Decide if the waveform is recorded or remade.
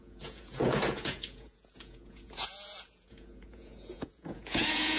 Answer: remade